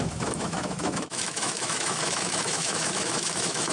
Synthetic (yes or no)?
yes